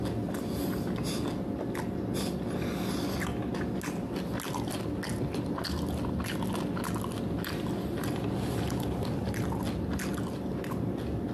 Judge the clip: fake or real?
real